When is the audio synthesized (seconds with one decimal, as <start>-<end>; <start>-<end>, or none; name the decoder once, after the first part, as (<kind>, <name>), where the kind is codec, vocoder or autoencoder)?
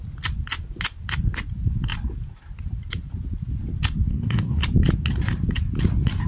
4.1-4.6 (codec, SNAC)